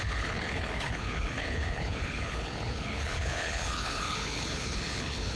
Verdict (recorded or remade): remade